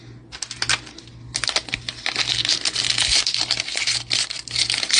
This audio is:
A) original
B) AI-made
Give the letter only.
A